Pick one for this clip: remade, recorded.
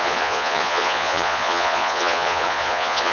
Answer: remade